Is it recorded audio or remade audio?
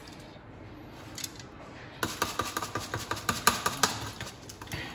recorded